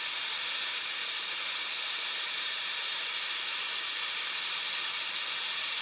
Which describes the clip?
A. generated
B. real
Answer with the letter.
A